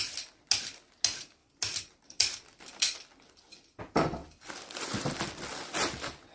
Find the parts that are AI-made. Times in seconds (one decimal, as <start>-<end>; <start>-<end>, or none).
1.4-3.8; 4.2-5.4